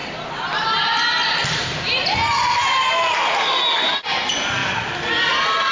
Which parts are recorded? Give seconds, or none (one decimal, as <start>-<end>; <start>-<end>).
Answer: 0.0-5.7